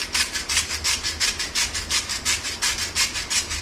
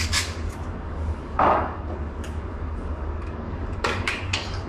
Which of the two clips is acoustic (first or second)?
first